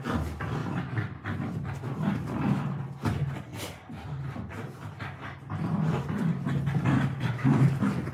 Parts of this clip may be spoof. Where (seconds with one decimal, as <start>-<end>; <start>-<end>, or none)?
none